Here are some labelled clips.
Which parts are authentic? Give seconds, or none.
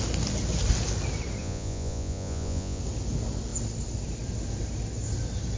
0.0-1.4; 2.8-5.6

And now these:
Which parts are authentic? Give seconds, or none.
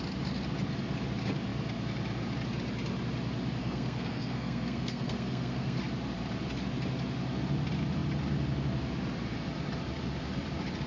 0.0-3.6; 5.8-10.9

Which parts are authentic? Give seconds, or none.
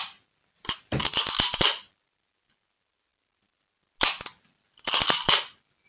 0.0-5.9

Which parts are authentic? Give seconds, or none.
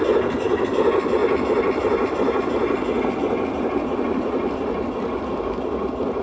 0.0-6.2